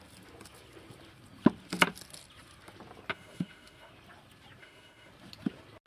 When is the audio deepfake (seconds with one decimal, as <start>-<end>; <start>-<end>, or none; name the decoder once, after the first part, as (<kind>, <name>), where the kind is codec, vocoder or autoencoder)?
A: 3.1-3.9 (autoencoder, DAC-VAE); 4.6-5.1

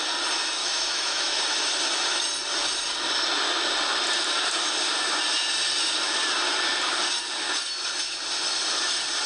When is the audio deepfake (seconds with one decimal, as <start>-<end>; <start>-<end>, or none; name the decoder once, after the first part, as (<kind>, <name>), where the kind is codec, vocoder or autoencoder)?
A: 0.6-1.4 (autoencoder, DAC-VAE)

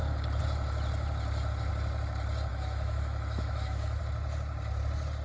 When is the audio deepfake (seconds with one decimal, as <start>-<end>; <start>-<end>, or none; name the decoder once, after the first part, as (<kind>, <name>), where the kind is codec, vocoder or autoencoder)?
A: 2.5-4.0 (autoencoder, DAC-VAE)

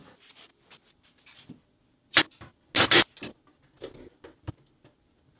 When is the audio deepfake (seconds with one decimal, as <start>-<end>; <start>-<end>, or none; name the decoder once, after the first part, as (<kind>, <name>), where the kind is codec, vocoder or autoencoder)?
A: none

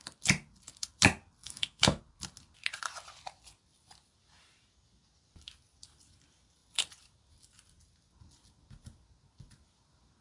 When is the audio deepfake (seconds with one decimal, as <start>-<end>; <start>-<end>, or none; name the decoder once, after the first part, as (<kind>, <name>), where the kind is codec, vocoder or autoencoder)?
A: 1.4-2.0 (autoencoder, DAC-VAE)

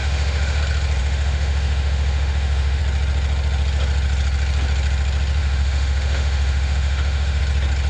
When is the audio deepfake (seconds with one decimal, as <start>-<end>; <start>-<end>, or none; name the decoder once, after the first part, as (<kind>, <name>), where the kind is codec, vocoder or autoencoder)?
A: 0.0-0.6 (autoencoder, DAC-VAE); 1.0-2.8; 5.4-7.4

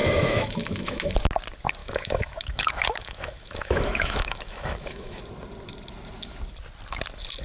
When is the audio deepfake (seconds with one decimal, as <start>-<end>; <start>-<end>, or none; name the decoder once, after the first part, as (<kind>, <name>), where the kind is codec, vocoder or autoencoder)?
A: 0.0-1.1 (autoencoder, DAC-VAE); 1.8-5.2

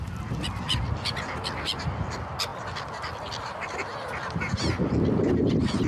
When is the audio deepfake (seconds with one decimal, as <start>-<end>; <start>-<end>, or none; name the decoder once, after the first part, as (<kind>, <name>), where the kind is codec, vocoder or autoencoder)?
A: none